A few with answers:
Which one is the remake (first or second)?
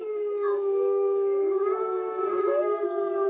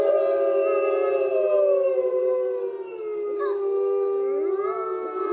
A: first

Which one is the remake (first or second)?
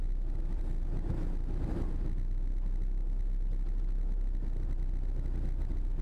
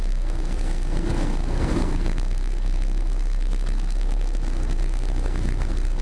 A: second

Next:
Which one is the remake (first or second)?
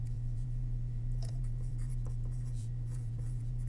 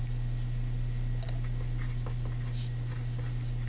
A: first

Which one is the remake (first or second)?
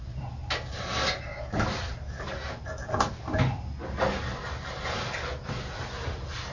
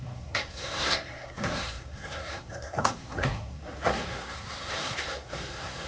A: second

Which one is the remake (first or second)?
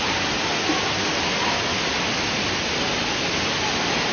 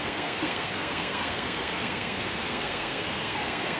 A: second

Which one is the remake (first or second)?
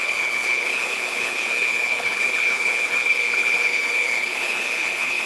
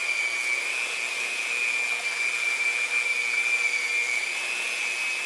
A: first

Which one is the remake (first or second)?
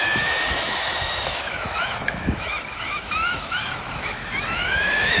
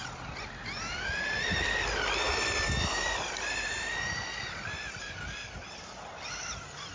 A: first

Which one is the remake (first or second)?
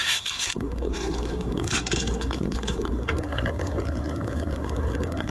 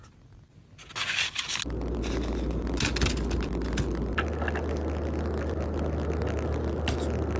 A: first